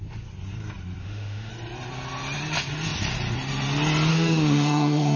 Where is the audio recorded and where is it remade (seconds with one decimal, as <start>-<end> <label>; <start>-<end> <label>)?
0.0-1.0 recorded; 1.0-1.5 remade; 1.5-4.1 recorded; 4.1-5.2 remade